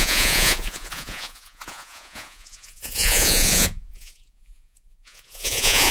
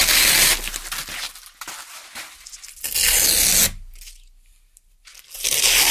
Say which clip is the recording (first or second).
second